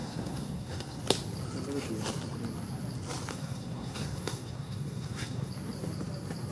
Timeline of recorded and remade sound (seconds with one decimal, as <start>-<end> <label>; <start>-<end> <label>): 0.0-1.0 remade; 1.0-3.3 recorded; 3.3-5.5 remade; 5.5-6.5 recorded